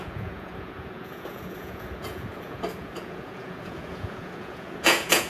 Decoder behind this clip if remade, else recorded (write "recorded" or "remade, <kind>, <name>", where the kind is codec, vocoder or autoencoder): remade, vocoder, Vocos